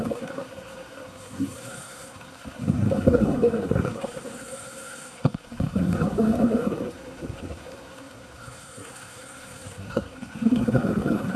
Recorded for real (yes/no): no